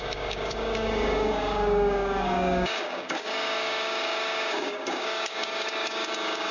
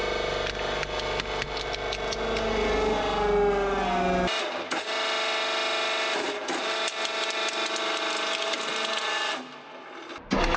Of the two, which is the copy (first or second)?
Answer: first